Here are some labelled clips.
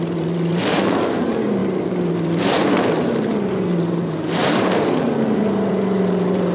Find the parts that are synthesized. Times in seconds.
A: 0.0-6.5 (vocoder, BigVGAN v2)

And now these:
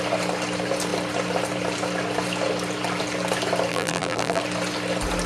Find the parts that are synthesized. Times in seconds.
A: 3.7-4.4 (vocoder, BigVGAN v2)

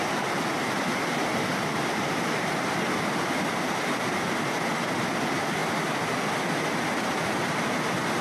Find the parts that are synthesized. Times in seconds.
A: 1.5-2.7 (vocoder, BigVGAN v2)

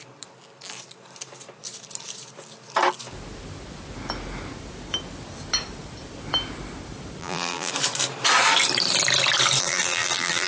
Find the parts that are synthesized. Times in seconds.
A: 7.2-7.7 (vocoder, BigVGAN v2); 9.6-10.5